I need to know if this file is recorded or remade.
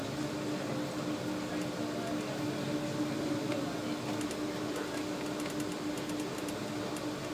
recorded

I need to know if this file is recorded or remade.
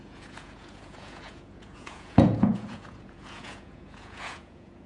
remade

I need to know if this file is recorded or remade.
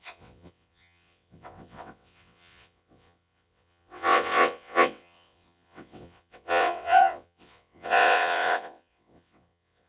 remade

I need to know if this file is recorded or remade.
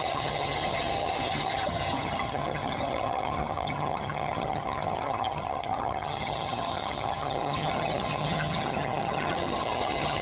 remade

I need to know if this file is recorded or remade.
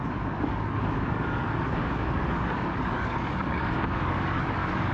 remade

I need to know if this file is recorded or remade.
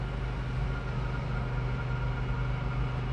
recorded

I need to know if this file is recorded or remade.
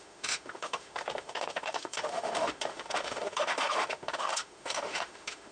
remade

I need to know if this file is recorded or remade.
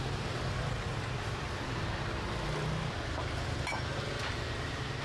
recorded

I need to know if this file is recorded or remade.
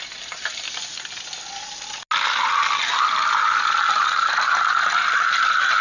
recorded